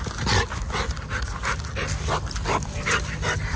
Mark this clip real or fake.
real